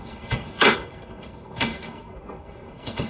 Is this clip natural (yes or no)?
no